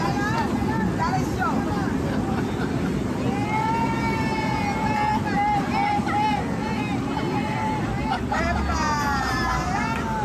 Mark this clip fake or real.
real